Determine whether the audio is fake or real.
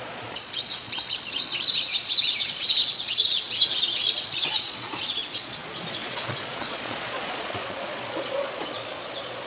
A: fake